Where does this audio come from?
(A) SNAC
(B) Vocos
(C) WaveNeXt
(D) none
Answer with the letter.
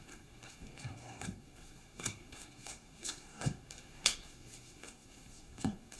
A